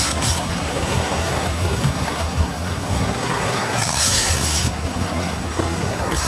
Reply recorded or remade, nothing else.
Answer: remade